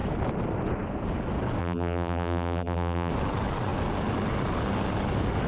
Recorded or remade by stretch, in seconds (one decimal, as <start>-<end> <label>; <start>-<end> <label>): 0.0-1.6 recorded; 1.6-3.1 remade; 3.1-5.5 recorded